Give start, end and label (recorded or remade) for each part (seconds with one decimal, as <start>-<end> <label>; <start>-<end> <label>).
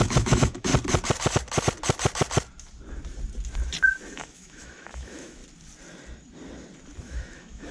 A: 0.0-0.7 remade; 0.7-4.1 recorded; 4.1-5.4 remade; 5.4-7.0 recorded; 7.0-7.7 remade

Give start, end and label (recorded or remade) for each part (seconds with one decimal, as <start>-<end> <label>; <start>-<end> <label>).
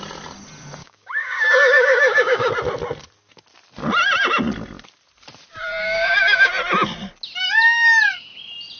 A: 0.0-0.8 recorded; 0.8-2.5 remade; 2.5-5.8 recorded; 5.8-6.5 remade; 6.5-8.8 recorded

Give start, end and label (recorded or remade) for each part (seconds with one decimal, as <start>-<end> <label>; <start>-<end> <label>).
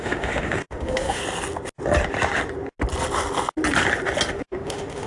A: 0.0-1.2 remade; 1.2-4.3 recorded; 4.3-5.1 remade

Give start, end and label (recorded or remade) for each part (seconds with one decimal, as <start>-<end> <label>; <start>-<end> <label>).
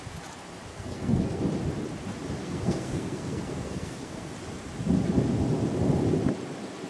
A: 0.0-0.7 recorded; 0.7-1.4 remade; 1.4-2.4 recorded; 2.4-4.3 remade; 4.3-6.9 recorded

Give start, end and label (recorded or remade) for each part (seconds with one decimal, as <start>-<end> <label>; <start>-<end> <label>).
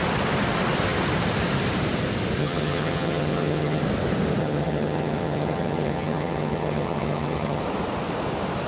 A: 0.0-2.4 recorded; 2.4-3.8 remade; 3.8-4.4 recorded; 4.4-7.6 remade; 7.6-8.7 recorded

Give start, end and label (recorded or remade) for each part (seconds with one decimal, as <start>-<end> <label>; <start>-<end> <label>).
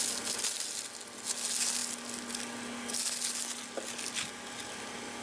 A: 0.0-5.2 recorded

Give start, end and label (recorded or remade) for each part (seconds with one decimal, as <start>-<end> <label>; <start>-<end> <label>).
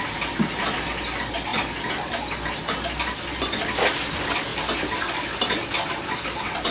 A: 0.0-6.7 recorded